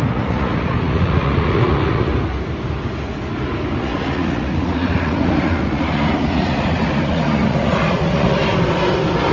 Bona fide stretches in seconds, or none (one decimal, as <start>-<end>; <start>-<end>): 2.1-3.8; 8.4-9.3